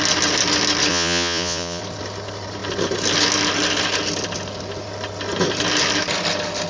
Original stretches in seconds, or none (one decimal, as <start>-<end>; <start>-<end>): 0.0-0.9; 1.8-6.7